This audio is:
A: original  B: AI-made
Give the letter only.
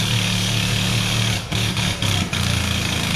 B